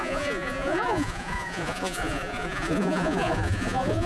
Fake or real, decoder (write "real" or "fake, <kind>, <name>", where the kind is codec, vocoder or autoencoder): fake, vocoder, Vocos